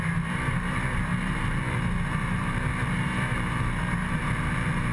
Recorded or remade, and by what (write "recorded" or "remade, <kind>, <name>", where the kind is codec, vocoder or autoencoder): remade, vocoder, BigVGAN v2